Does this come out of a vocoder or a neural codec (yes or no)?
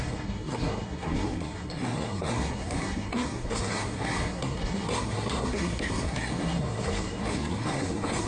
yes